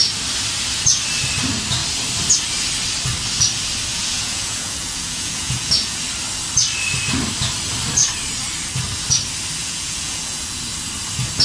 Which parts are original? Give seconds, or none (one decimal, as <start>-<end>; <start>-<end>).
0.0-3.9; 6.0-9.6; 10.6-11.4